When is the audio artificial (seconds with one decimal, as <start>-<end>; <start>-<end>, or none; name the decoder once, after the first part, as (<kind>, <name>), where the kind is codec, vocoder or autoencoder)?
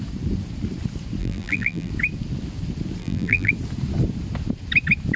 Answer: 1.2-1.9 (vocoder, BigVGAN v2); 3.0-3.5